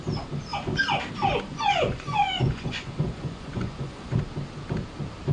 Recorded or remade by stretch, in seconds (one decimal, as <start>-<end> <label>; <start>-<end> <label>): 0.0-1.5 recorded; 1.5-4.2 remade; 4.2-5.3 recorded